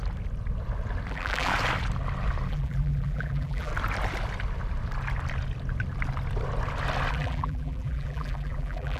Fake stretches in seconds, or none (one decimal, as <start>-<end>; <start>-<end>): 1.1-1.5; 2.5-3.7; 7.1-9.0